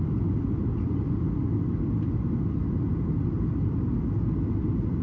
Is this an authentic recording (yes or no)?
yes